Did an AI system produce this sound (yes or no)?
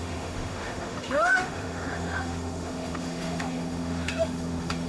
yes